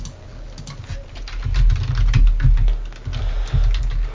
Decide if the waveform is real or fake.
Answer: real